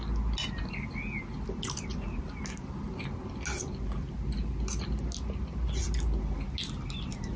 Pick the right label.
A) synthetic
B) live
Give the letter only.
B